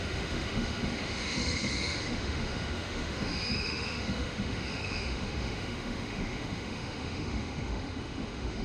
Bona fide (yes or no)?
no